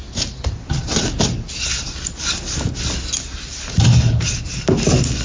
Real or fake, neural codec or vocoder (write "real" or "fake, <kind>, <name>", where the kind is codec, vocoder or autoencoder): real